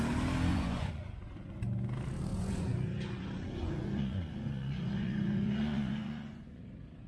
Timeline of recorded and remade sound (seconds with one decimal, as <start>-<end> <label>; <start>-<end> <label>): 0.0-0.5 recorded; 0.5-1.6 remade; 1.6-2.3 recorded; 2.3-6.6 remade; 6.6-7.1 recorded